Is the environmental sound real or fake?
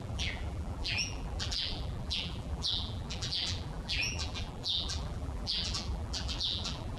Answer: fake